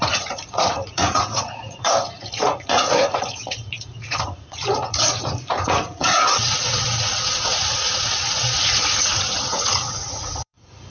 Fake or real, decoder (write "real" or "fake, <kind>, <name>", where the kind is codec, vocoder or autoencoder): fake, vocoder, Vocos